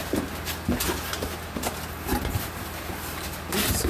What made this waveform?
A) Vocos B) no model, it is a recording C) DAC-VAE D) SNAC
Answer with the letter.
B